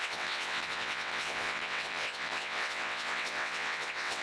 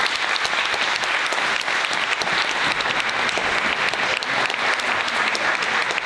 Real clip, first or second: second